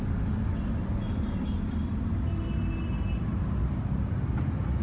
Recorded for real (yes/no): yes